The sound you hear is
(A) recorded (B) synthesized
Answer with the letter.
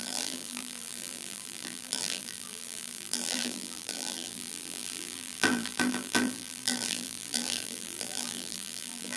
B